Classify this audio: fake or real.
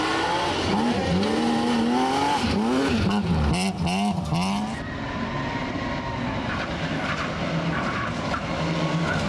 real